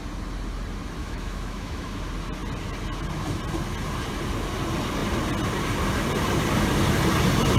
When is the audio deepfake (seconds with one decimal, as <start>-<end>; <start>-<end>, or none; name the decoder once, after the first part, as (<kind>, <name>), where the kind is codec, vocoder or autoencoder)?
1.0-2.0 (autoencoder, DAC-VAE)